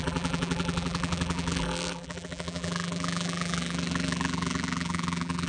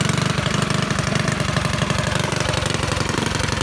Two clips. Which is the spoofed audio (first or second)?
first